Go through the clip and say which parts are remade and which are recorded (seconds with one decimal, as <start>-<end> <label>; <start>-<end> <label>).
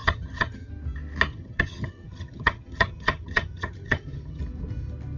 0.0-0.7 remade; 0.7-1.3 recorded; 1.3-4.4 remade; 4.4-5.2 recorded